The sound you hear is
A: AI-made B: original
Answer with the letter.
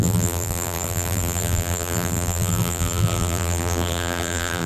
A